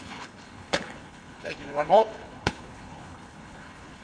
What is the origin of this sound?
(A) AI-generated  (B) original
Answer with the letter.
A